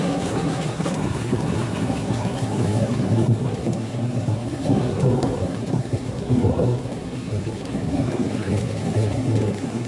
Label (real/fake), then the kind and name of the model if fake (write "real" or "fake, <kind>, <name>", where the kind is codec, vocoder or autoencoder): fake, codec, SNAC